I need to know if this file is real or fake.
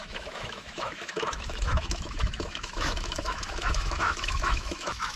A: fake